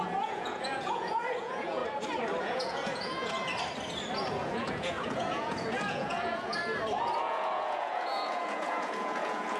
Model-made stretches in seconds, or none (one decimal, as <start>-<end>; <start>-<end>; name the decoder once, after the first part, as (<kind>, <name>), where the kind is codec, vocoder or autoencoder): 0.0-1.8 (vocoder, Vocos); 2.4-3.4; 4.3-6.6; 7.2-9.6